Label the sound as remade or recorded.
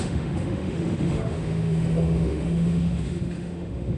remade